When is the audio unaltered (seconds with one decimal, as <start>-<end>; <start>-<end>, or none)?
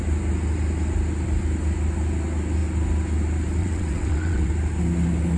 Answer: 0.0-3.6; 4.5-5.4